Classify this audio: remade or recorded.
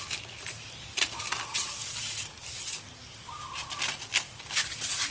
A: recorded